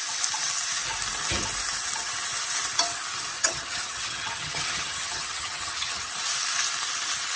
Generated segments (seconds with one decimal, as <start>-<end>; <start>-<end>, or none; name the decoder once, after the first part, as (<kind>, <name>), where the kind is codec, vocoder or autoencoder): 3.4-6.1 (vocoder, HiFi-GAN)